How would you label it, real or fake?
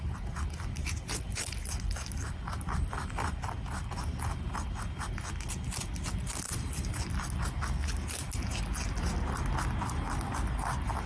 real